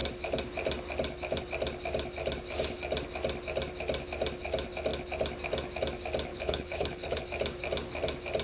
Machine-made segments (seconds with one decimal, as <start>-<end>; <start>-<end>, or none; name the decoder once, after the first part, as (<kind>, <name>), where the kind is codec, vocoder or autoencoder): 6.3-7.2 (codec, HILCodec)